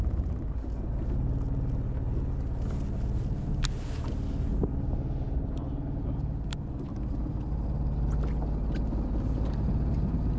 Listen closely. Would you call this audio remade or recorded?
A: recorded